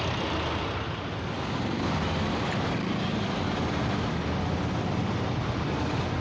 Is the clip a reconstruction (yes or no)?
no